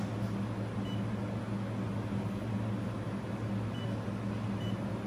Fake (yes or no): no